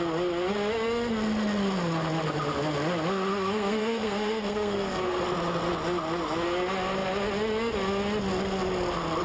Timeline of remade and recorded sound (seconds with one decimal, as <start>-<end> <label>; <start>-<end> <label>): 0.0-3.3 recorded; 3.3-5.2 remade; 5.2-9.2 recorded